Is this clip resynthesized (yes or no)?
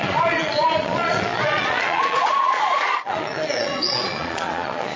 yes